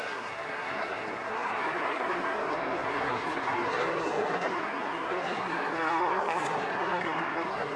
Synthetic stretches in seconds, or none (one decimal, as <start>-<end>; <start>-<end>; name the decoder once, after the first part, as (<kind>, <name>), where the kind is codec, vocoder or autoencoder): 0.0-7.8 (codec, SNAC)